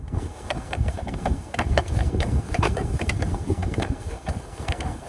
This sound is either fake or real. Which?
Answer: fake